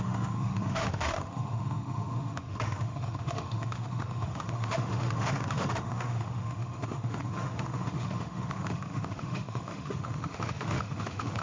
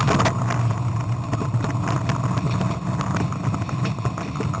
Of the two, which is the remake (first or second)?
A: first